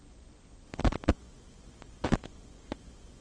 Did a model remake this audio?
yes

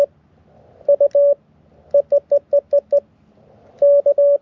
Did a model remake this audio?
no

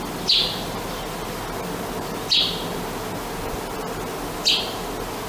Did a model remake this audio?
no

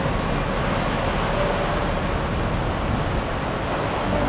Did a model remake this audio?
no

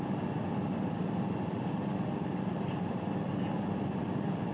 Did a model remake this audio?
no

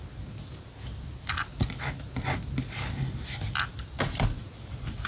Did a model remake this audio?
no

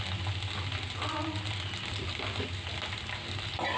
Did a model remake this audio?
no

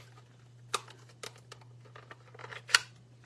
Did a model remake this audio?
no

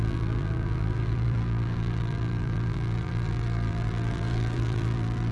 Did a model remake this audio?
yes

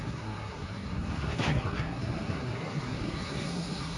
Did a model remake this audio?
yes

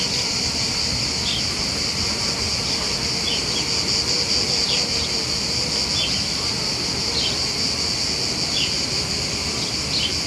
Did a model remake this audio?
no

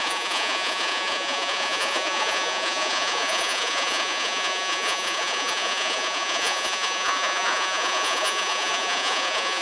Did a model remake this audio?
yes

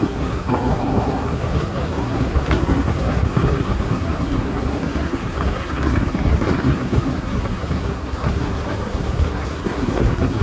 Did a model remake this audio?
yes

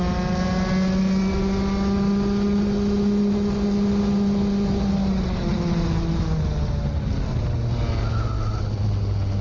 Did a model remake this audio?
no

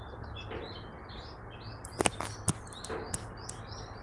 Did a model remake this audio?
no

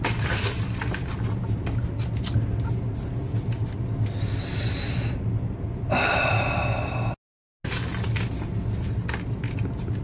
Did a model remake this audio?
no